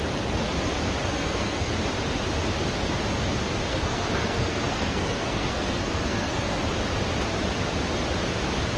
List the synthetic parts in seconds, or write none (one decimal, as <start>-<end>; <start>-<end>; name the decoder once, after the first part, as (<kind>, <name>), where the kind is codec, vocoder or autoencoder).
1.1-1.7 (codec, SNAC); 3.7-6.6